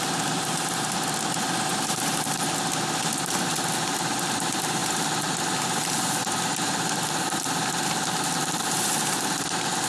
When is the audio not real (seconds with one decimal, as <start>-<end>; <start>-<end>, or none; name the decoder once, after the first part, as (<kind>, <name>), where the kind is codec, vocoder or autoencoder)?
none